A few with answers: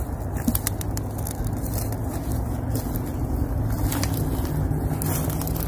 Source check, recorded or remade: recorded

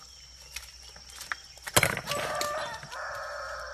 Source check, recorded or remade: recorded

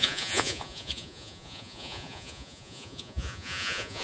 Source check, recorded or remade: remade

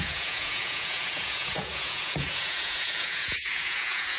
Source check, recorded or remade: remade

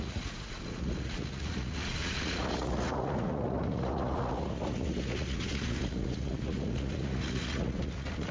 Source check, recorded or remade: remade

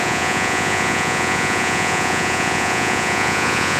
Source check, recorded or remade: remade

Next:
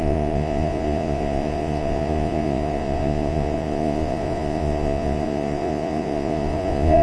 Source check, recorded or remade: remade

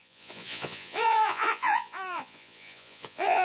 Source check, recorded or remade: remade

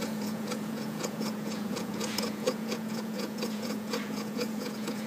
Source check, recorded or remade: remade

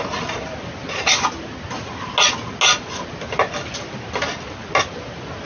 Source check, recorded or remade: recorded